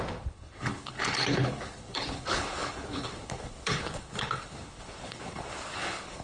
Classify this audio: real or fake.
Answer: fake